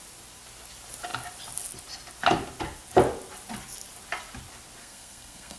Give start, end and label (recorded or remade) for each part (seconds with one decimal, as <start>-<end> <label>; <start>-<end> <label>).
0.0-4.8 recorded; 4.8-5.6 remade

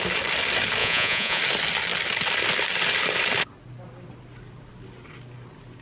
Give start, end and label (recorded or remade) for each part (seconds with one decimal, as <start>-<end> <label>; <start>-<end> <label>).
0.0-0.8 recorded; 0.8-1.4 remade; 1.4-5.8 recorded

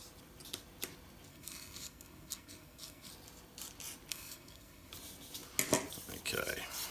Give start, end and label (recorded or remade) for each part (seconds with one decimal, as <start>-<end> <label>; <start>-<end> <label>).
0.0-1.3 recorded; 1.3-3.1 remade; 3.1-4.1 recorded; 4.1-4.9 remade; 4.9-6.9 recorded